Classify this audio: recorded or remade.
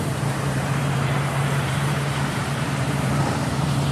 remade